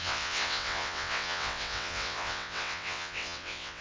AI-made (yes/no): yes